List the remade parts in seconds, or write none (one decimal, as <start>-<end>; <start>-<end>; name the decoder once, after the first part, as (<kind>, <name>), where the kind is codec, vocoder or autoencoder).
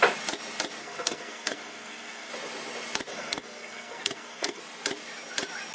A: 0.8-2.3 (codec, SNAC); 3.1-4.6